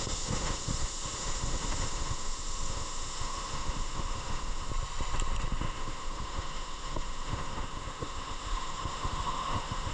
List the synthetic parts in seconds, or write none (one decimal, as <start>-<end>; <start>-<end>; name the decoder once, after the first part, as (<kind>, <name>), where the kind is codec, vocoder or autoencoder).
0.0-4.7 (autoencoder, DAC-VAE); 5.6-9.9